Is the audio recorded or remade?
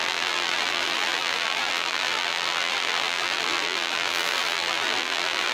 remade